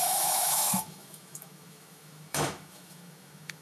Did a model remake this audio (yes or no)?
yes